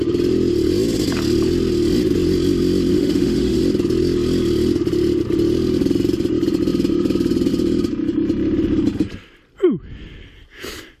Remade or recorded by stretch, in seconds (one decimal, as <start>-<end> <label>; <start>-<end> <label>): 0.0-2.9 recorded; 2.9-3.6 remade; 3.6-11.0 recorded